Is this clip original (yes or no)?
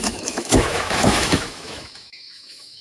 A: no